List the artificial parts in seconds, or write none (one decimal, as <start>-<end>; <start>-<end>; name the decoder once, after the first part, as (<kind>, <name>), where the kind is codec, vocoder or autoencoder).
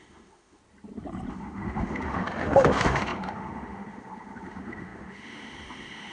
0.0-0.6 (autoencoder, DAC-VAE); 1.3-6.1